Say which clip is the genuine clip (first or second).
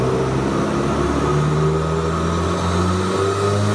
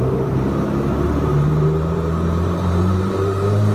first